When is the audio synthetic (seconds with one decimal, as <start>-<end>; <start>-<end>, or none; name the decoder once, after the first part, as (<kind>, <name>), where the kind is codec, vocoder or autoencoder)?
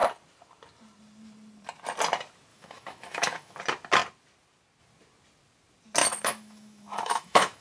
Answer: 2.5-3.6 (autoencoder, DAC-VAE); 6.0-7.6